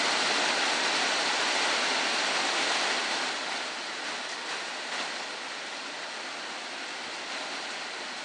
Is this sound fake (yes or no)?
no